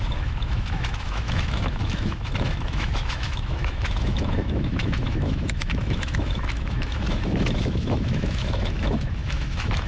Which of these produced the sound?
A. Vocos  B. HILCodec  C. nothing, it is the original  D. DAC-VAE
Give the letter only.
D